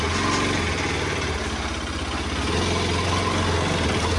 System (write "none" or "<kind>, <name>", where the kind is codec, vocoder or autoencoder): none